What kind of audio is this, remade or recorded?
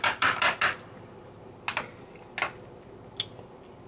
recorded